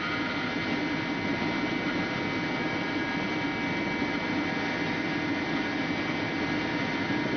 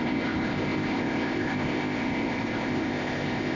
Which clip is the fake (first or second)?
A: second